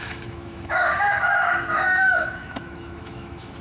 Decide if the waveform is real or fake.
fake